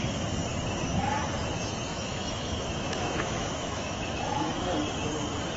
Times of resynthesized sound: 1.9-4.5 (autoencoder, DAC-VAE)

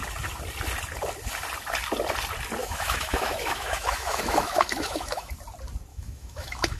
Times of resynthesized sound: 2.6-5.3 (autoencoder, DAC-VAE); 5.9-6.8

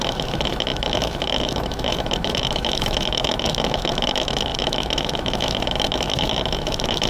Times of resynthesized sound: 0.0-7.1 (autoencoder, DAC-VAE)

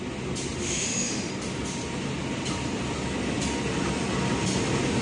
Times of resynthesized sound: 0.6-1.3 (autoencoder, DAC-VAE)

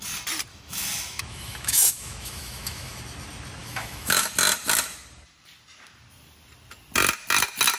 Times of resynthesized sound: 0.5-3.0 (autoencoder, DAC-VAE); 3.6-4.3

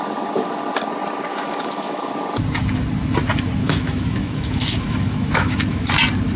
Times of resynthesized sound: 1.3-2.1 (autoencoder, DAC-VAE); 3.6-5.9